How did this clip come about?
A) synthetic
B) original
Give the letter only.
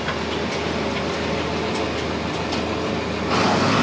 B